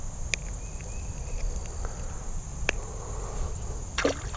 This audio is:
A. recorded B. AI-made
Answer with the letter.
A